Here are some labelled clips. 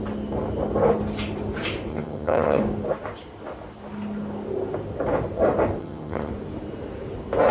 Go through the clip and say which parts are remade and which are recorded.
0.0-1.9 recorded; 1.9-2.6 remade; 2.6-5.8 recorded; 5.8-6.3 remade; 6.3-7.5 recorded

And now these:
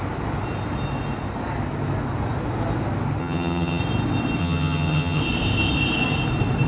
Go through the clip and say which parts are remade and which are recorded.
0.0-3.2 recorded; 3.2-3.8 remade; 3.8-4.4 recorded; 4.4-5.2 remade; 5.2-6.7 recorded

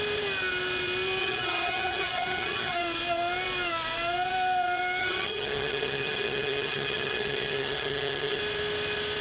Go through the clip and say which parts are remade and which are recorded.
0.0-1.2 recorded; 1.2-2.8 remade; 2.8-5.0 recorded; 5.0-8.4 remade; 8.4-9.2 recorded

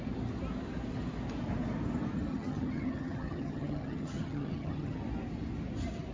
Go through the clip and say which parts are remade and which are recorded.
0.0-2.3 recorded; 2.3-5.0 remade; 5.0-6.1 recorded

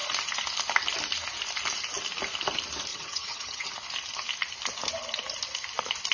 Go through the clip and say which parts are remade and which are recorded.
0.0-2.9 recorded; 2.9-3.7 remade; 3.7-6.1 recorded

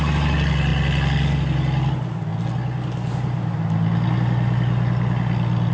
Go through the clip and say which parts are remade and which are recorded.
0.0-5.7 recorded

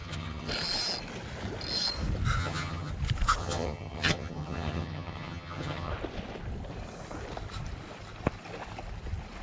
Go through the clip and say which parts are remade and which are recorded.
0.0-0.5 remade; 0.5-2.4 recorded; 2.4-2.9 remade; 2.9-3.4 recorded; 3.4-5.9 remade; 5.9-9.4 recorded

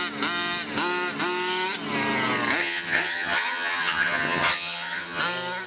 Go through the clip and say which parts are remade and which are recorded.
0.0-2.6 recorded; 2.6-5.2 remade; 5.2-5.7 recorded